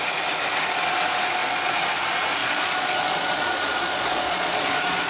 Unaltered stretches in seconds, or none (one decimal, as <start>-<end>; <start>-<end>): 0.0-2.4